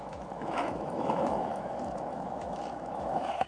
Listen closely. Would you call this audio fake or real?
fake